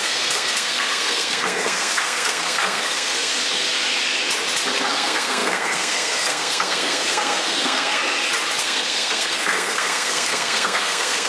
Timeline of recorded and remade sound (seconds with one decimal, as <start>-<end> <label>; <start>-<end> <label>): 0.0-3.3 remade; 3.3-4.9 recorded; 4.9-8.0 remade; 8.0-8.6 recorded; 8.6-11.3 remade